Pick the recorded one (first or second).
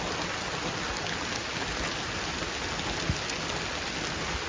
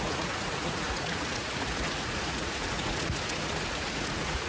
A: first